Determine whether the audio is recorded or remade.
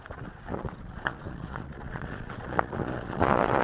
remade